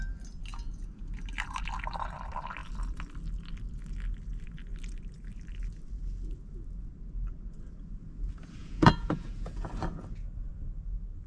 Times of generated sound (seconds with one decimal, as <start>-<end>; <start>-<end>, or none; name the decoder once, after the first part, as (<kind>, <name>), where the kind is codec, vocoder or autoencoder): 0.5-1.2 (vocoder, Vocos); 8.6-9.7